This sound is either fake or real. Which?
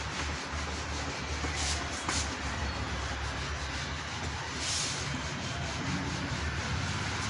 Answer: real